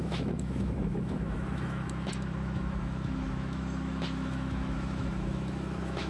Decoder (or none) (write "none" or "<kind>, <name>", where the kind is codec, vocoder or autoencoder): autoencoder, DAC-VAE